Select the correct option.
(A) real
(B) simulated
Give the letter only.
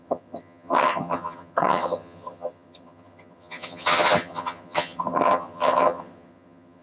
B